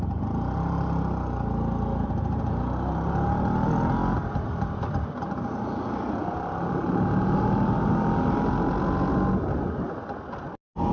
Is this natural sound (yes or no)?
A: yes